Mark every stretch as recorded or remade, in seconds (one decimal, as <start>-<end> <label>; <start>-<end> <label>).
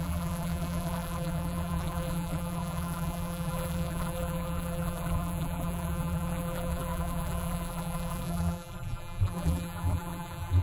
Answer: 0.0-10.6 remade